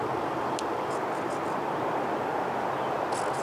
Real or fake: real